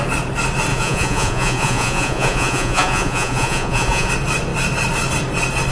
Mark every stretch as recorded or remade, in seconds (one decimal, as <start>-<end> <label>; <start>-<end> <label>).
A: 0.0-0.7 recorded; 0.7-4.1 remade; 4.1-5.7 recorded